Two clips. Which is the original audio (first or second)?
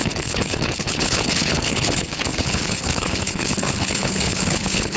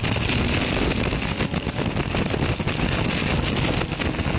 second